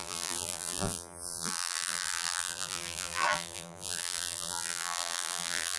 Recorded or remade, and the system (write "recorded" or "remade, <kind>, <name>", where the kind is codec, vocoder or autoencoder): remade, vocoder, BigVGAN v2